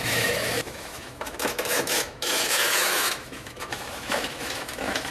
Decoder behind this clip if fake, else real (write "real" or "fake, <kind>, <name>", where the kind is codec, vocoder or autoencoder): fake, autoencoder, DAC-VAE